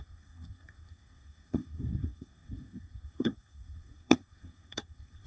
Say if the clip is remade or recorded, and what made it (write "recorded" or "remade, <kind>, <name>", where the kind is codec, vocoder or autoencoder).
remade, codec, SNAC